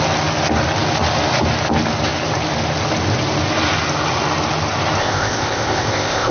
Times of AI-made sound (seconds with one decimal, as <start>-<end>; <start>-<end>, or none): 5.0-6.3

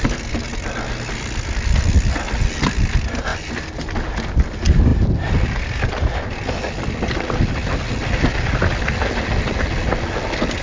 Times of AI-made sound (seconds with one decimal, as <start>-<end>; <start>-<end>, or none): none